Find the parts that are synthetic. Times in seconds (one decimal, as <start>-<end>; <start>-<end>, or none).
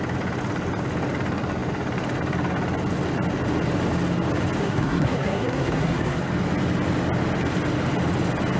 4.6-6.2